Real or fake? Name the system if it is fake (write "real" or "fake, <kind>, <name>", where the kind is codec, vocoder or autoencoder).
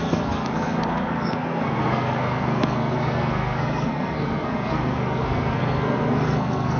fake, codec, SNAC